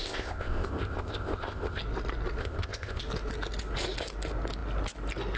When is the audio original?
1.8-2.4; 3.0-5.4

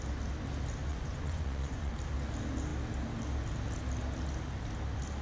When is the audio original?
0.0-0.9; 1.9-5.2

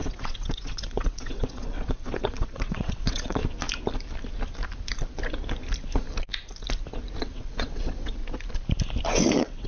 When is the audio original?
3.4-7.2; 8.2-9.1